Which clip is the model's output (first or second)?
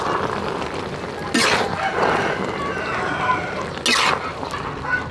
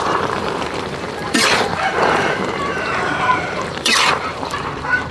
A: second